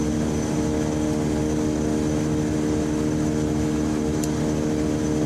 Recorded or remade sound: recorded